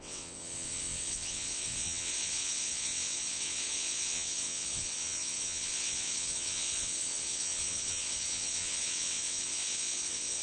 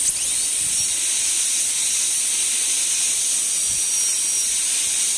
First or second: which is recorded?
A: second